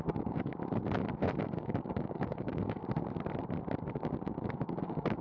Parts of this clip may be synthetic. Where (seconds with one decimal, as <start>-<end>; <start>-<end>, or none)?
0.0-0.5; 1.4-2.8; 3.9-5.2